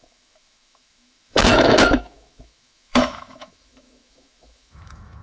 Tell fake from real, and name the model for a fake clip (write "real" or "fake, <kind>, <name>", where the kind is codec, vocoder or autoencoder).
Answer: fake, autoencoder, DAC-VAE